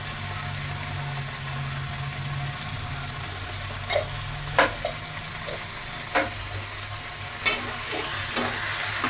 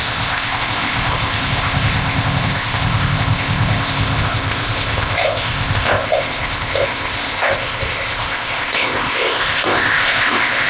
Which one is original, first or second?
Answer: first